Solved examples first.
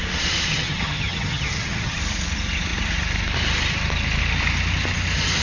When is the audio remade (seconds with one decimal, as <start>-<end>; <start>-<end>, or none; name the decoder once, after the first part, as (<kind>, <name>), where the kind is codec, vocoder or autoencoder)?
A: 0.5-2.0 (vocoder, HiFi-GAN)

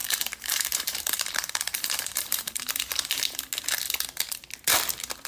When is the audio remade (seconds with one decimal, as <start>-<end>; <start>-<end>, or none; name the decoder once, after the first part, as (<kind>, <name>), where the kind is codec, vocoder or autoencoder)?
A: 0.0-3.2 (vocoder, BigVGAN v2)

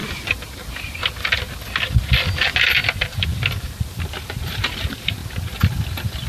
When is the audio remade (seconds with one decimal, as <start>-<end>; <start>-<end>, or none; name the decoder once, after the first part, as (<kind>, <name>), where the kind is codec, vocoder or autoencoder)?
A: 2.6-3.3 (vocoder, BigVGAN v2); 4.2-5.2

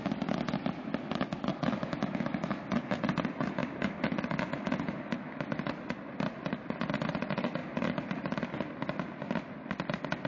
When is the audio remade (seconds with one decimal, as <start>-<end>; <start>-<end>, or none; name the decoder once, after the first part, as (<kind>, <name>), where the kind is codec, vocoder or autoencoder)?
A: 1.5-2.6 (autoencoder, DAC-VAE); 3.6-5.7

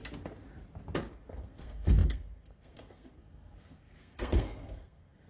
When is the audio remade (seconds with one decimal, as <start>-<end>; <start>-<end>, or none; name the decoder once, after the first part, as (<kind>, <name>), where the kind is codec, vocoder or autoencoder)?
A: 1.1-5.3 (codec, SNAC)

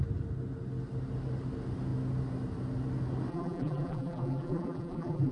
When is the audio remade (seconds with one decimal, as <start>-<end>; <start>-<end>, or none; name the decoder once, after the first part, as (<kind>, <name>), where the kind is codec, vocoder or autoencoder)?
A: 3.3-5.3 (vocoder, BigVGAN v2)

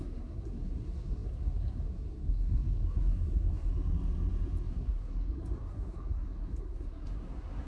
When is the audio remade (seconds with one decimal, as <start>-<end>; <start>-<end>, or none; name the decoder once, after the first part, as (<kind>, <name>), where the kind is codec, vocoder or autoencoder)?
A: 0.0-3.7 (codec, SNAC); 4.7-7.7